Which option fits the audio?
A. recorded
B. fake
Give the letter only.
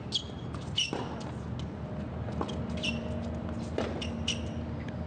A